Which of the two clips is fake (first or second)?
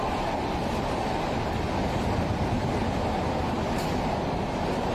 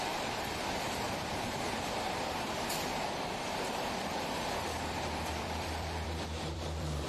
second